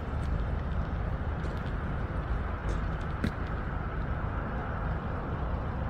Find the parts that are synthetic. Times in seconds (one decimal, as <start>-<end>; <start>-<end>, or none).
2.6-4.0; 4.6-5.9